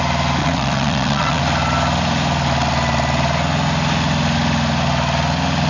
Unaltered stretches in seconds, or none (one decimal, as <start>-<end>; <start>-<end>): 0.0-0.4; 1.4-5.7